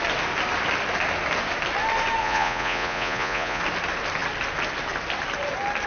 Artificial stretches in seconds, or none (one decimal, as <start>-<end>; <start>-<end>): 2.2-3.6